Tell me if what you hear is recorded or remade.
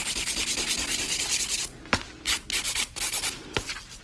recorded